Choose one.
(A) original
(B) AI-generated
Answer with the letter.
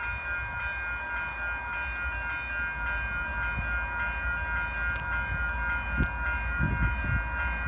A